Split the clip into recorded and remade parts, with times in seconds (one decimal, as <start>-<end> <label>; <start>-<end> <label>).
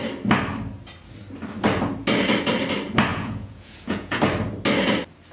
0.0-3.1 recorded; 3.1-4.2 remade; 4.2-5.3 recorded